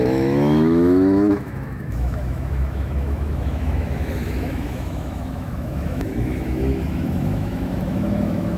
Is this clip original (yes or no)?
no